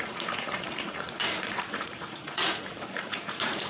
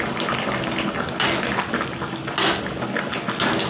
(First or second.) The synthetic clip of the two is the first